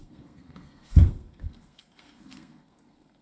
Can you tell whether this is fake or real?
fake